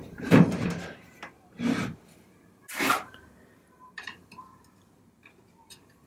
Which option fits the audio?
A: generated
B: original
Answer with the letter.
A